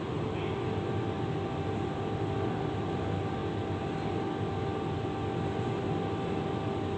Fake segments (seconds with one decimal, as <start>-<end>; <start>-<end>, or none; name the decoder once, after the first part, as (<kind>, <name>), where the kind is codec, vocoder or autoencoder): none